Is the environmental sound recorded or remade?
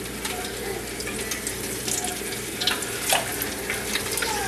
recorded